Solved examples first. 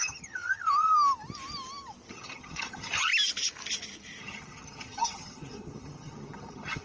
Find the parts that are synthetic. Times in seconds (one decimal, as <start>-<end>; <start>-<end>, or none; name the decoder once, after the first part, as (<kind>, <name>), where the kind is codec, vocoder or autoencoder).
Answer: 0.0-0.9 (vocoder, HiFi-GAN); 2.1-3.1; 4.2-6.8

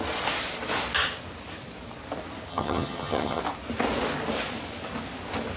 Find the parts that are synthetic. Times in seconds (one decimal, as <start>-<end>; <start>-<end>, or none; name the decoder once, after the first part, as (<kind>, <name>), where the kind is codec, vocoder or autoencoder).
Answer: 2.5-3.4 (vocoder, HiFi-GAN)

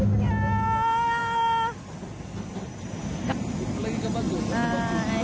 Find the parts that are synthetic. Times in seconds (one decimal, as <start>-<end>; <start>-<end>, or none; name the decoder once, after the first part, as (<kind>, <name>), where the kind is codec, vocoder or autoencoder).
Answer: none

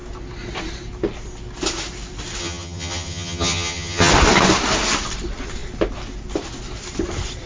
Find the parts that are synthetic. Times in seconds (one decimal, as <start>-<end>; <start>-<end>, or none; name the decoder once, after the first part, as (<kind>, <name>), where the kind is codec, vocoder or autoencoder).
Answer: 2.4-4.1 (vocoder, HiFi-GAN)

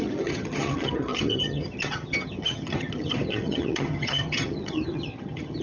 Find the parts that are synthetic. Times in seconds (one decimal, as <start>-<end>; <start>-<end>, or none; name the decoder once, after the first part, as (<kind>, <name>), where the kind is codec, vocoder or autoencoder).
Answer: 0.0-5.6 (vocoder, HiFi-GAN)